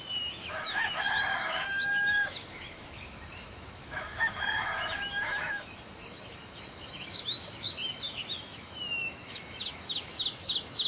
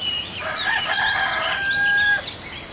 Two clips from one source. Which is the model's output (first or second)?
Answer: first